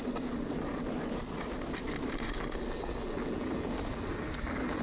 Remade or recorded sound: recorded